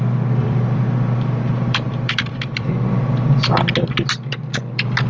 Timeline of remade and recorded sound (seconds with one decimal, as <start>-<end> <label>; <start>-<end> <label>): 0.0-0.4 recorded; 0.4-3.5 remade; 3.5-5.1 recorded